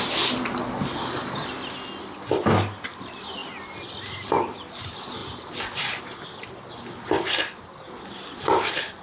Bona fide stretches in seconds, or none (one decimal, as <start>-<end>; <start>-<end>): 0.0-9.0